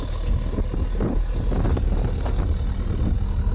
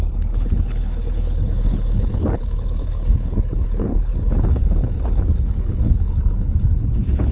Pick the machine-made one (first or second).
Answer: second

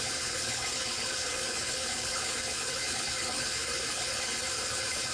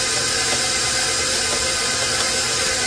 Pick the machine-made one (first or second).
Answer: first